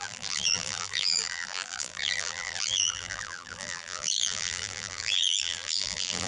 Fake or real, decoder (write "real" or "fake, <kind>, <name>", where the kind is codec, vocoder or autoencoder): fake, vocoder, BigVGAN v2